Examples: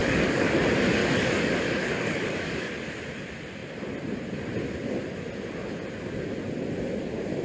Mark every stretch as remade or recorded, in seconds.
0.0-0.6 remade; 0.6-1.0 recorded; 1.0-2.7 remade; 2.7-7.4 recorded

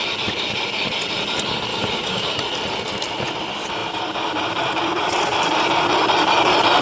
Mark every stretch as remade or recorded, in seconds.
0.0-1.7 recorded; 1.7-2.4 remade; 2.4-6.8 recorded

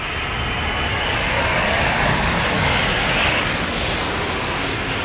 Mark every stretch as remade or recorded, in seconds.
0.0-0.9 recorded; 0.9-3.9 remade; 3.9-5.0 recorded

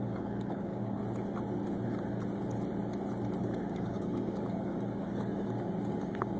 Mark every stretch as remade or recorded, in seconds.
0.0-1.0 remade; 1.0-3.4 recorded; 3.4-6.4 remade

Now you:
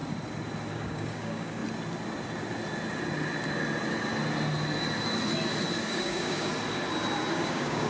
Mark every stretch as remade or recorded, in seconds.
0.0-0.7 recorded; 0.7-1.6 remade; 1.6-5.9 recorded; 5.9-6.5 remade; 6.5-7.3 recorded; 7.3-7.9 remade

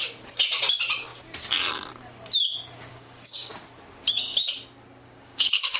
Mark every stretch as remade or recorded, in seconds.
0.0-2.9 recorded; 2.9-3.5 remade; 3.5-5.0 recorded; 5.0-5.8 remade